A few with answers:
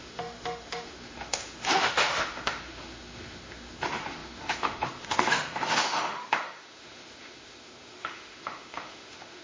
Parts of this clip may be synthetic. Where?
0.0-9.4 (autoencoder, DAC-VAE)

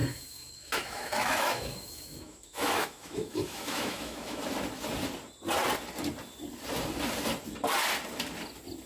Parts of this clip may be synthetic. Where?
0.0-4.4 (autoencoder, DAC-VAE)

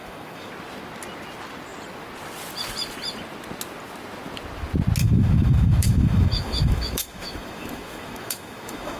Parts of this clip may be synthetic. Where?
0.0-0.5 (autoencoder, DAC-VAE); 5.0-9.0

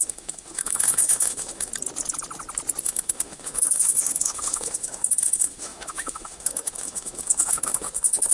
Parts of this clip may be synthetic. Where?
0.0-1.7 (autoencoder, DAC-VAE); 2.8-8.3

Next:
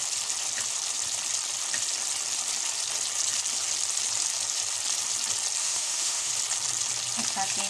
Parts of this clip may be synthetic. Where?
5.6-6.3 (autoencoder, DAC-VAE)

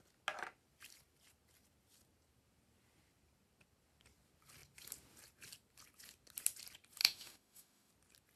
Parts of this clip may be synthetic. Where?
7.0-7.9 (autoencoder, DAC-VAE)